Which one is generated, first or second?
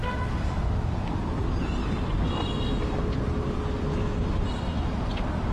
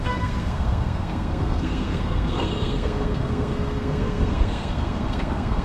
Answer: second